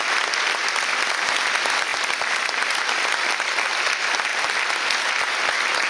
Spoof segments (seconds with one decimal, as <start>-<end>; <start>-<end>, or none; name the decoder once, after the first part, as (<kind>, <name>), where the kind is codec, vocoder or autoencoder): 1.9-3.0 (vocoder, BigVGAN v2); 4.3-5.0